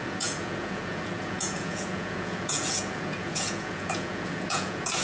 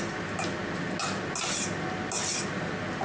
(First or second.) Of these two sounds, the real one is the second